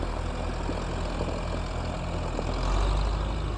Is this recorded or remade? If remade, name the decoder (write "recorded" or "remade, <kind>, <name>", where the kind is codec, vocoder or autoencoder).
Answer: recorded